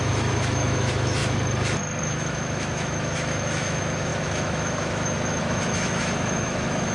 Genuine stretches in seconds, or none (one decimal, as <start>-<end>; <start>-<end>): 1.2-2.0